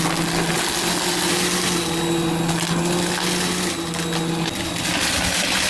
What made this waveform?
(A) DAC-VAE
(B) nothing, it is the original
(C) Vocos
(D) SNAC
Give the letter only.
B